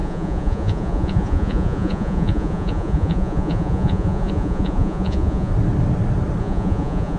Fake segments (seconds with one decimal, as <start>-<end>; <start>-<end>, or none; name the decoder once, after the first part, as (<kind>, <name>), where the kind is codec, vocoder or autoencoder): 0.0-5.5 (vocoder, Vocos); 6.4-7.2